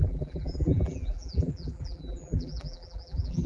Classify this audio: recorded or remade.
remade